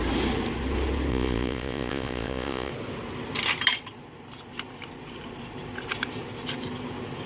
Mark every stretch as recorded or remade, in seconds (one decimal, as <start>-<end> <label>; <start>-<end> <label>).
0.0-1.1 recorded; 1.1-2.7 remade; 2.7-7.3 recorded